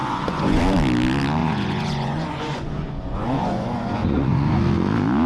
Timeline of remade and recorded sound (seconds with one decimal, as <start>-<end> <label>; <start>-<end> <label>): 0.0-0.6 remade; 0.6-1.4 recorded; 1.4-4.6 remade; 4.6-5.3 recorded